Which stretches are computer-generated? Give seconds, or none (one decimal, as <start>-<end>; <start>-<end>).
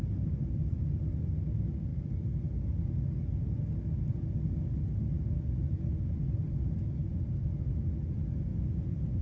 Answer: 8.5-9.2